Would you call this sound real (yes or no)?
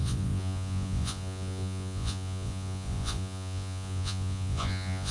no